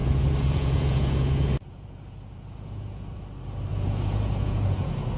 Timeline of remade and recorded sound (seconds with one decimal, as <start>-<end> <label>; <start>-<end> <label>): 0.0-3.1 remade; 3.1-3.7 recorded; 3.7-5.2 remade